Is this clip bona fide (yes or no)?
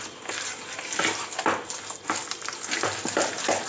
yes